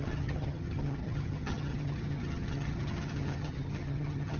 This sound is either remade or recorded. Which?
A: remade